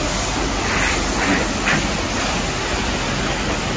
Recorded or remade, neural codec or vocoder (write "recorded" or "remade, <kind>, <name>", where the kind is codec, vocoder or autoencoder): recorded